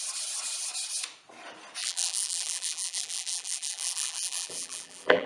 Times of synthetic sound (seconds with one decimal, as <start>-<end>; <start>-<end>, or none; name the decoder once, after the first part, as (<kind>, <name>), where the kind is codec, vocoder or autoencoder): 1.8-5.3 (vocoder, BigVGAN v2)